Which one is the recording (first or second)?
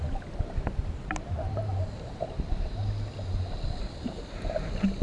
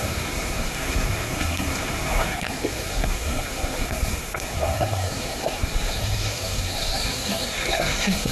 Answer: first